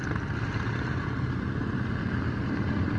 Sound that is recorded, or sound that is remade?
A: recorded